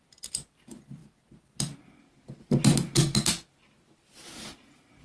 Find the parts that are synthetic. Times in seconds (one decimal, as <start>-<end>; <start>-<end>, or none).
none